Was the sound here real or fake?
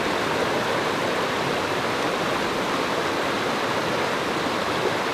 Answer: real